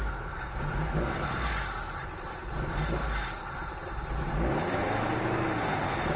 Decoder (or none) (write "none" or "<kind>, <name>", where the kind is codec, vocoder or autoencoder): none